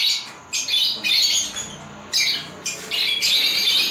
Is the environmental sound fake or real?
real